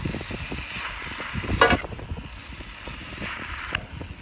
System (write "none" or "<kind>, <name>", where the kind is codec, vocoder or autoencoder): none